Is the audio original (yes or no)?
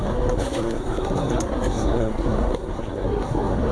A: no